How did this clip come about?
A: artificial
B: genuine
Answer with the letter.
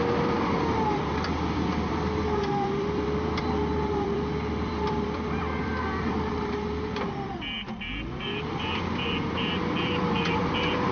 A